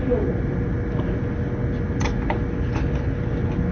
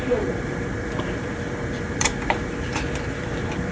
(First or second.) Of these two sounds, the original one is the first